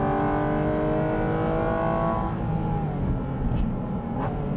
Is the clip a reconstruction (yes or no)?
no